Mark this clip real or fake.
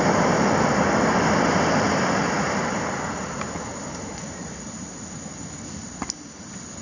real